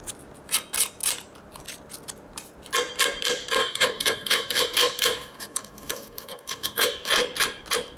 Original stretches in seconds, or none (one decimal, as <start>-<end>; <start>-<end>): 0.0-3.6; 7.1-8.0